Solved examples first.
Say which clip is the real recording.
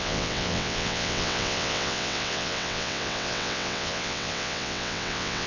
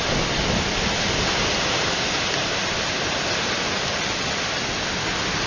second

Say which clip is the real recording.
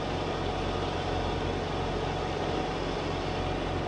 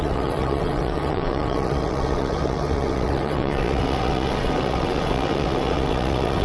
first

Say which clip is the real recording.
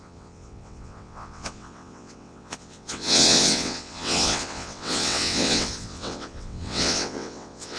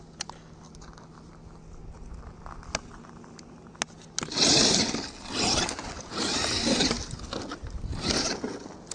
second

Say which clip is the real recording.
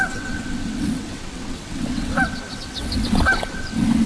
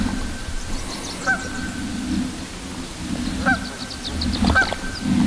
second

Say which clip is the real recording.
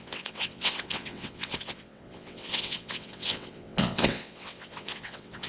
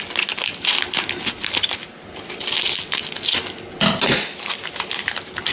second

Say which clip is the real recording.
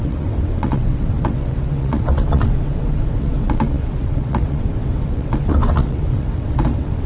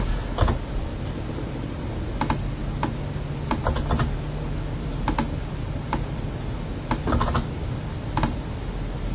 second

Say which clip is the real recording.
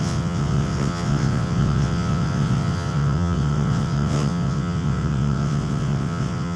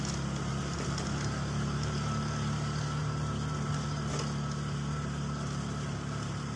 second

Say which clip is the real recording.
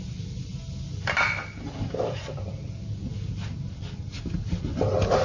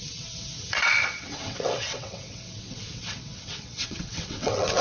first